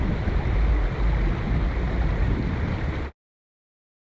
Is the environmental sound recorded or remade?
recorded